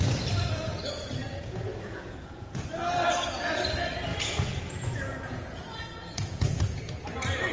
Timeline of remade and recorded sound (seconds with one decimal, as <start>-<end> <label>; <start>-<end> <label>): 0.0-1.2 recorded; 1.2-2.6 remade; 2.6-4.1 recorded; 4.1-6.8 remade; 6.8-7.5 recorded